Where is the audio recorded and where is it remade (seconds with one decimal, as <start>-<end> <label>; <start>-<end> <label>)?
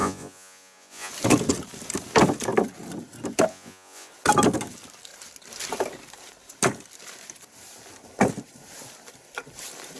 0.0-1.1 remade; 1.1-3.5 recorded; 3.5-4.1 remade; 4.1-10.0 recorded